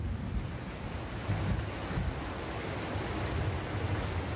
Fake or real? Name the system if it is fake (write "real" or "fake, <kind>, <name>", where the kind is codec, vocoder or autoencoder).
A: real